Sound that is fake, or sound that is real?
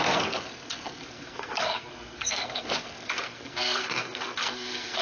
fake